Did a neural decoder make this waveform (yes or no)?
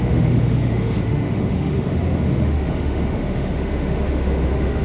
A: yes